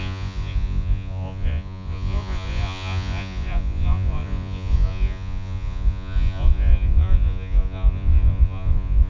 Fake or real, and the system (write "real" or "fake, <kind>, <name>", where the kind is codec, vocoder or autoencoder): fake, vocoder, Vocos